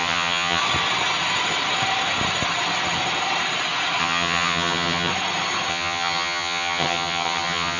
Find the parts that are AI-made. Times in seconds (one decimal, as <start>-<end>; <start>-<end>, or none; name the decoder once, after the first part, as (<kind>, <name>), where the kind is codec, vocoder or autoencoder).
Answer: 0.0-0.6 (vocoder, HiFi-GAN); 4.0-5.1; 5.7-7.8